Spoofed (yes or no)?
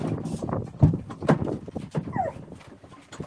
no